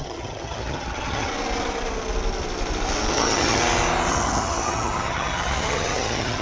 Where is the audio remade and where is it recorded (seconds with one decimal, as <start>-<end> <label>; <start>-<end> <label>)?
0.0-1.3 remade; 1.3-3.1 recorded; 3.1-3.6 remade; 3.6-4.1 recorded; 4.1-6.4 remade